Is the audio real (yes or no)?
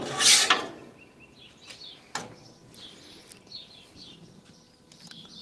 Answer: yes